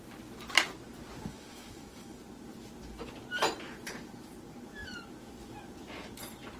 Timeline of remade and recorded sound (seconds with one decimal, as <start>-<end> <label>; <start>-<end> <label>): 0.0-1.3 recorded; 1.3-2.2 remade; 2.2-6.6 recorded